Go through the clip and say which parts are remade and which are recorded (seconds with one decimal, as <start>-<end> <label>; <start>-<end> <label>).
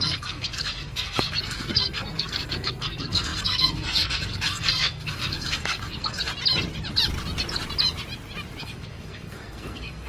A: 0.0-6.3 remade; 6.3-8.6 recorded; 8.6-10.1 remade